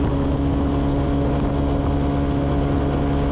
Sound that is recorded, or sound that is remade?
recorded